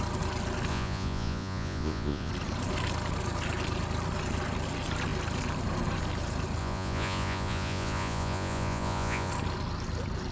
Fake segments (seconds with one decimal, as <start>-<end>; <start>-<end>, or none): 0.7-2.3; 6.6-9.3